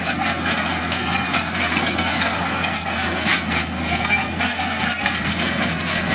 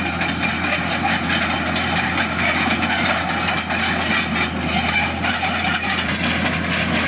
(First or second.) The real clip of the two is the second